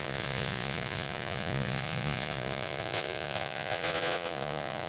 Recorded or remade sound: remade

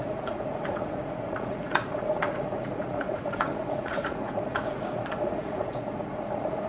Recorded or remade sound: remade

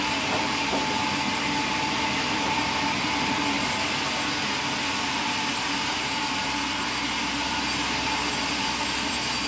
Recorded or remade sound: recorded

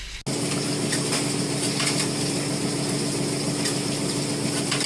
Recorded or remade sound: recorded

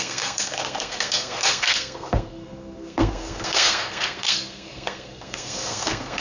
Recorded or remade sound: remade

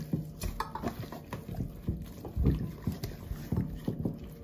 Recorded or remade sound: recorded